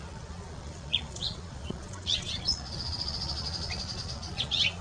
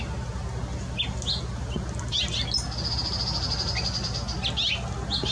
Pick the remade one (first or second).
first